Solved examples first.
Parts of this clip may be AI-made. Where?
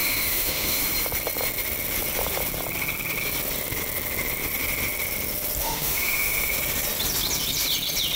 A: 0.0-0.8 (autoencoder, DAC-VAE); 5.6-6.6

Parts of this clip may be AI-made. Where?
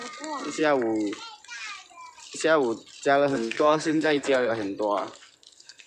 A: 3.3-4.5 (codec, SNAC); 5.0-5.9